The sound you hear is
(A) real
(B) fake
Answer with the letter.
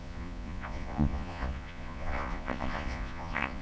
B